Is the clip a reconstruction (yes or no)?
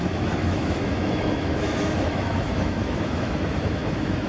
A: yes